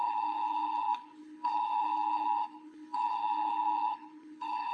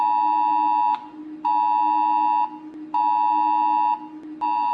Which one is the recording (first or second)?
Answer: second